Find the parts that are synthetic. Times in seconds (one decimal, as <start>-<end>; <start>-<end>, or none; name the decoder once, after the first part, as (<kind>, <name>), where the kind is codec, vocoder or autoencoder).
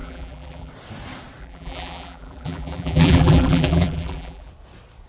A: 0.0-0.7 (vocoder, BigVGAN v2); 1.4-4.5